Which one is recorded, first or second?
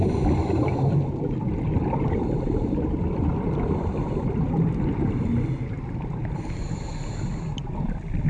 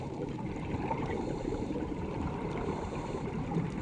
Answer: first